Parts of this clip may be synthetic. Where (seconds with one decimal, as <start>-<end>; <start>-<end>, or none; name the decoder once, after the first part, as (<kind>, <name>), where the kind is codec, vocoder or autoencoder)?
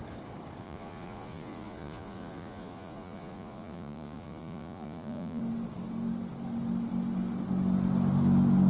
0.6-5.4 (vocoder, Vocos)